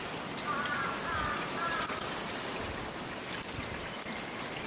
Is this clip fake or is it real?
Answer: real